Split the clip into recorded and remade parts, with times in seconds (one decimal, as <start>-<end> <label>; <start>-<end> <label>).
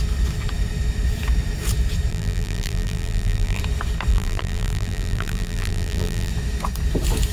0.0-2.1 recorded; 2.1-3.6 remade; 3.6-4.1 recorded; 4.1-6.3 remade; 6.3-7.3 recorded